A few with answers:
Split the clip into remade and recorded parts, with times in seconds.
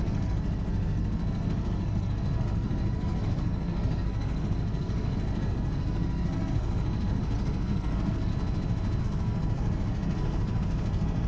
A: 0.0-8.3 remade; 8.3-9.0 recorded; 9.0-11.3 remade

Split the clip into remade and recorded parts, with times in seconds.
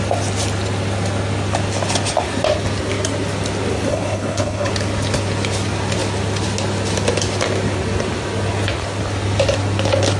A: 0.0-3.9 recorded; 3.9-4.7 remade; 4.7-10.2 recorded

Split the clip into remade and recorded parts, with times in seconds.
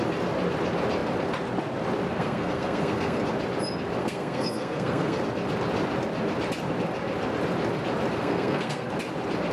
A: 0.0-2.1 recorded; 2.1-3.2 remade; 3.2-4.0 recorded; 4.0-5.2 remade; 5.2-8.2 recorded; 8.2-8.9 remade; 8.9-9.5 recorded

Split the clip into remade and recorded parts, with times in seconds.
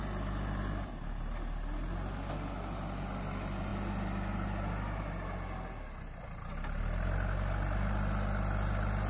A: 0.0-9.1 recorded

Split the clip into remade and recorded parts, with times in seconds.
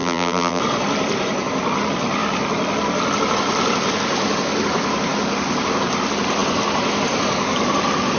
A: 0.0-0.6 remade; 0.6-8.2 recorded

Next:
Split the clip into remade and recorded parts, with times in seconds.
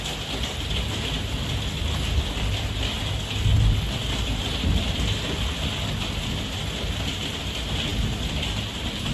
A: 0.0-9.1 recorded